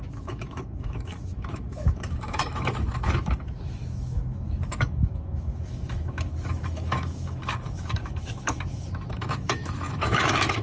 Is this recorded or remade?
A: remade